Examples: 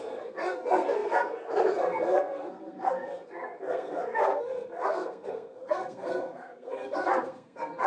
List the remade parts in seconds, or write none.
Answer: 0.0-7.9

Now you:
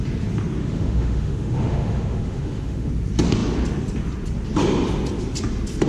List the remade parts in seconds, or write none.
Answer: 0.6-2.9

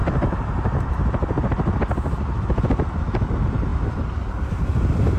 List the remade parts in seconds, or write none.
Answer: none

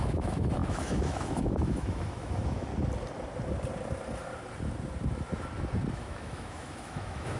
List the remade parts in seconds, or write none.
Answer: 0.0-2.7; 5.9-7.4

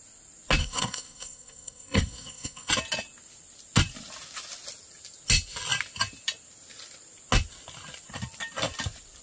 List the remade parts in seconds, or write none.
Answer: 0.6-2.7